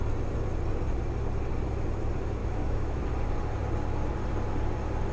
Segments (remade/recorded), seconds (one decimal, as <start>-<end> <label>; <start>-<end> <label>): 0.0-2.4 recorded; 2.4-3.0 remade; 3.0-5.1 recorded